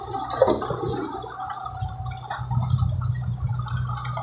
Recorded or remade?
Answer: recorded